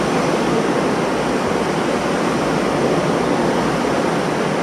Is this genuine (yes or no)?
yes